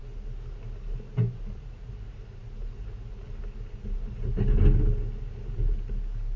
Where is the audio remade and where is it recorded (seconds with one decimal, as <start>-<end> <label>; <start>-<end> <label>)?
0.0-6.4 recorded